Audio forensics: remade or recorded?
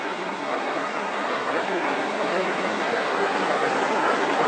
remade